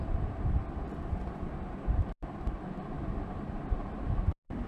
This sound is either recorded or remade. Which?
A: recorded